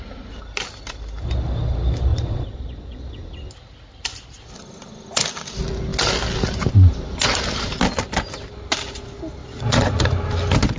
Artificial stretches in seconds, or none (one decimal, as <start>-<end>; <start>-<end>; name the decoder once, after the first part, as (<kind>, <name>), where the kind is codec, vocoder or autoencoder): 2.1-3.2 (vocoder, Vocos); 9.4-10.0